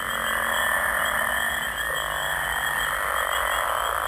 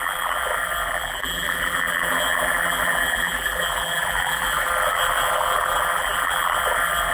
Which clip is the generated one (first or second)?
second